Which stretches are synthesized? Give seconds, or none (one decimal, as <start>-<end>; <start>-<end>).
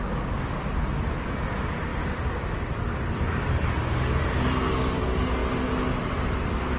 0.0-1.9; 3.0-5.4; 6.0-6.8